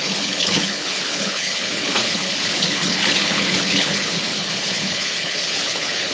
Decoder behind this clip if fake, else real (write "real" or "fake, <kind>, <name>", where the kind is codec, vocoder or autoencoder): fake, codec, HILCodec